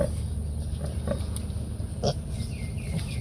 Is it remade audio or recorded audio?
recorded